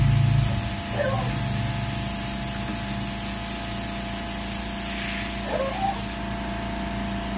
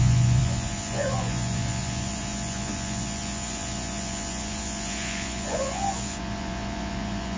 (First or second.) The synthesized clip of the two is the second